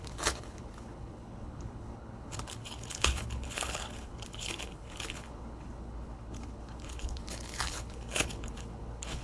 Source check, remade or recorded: remade